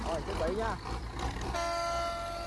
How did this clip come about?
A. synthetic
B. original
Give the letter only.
B